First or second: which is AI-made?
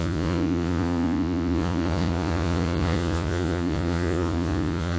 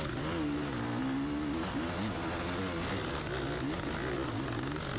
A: first